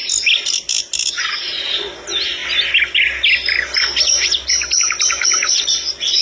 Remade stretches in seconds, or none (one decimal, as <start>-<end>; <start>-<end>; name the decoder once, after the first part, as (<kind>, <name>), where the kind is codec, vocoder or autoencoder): none